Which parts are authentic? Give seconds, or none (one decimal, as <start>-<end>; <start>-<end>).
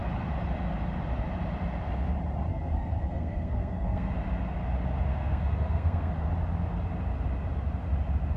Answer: 0.0-2.5; 4.1-5.1; 6.1-8.4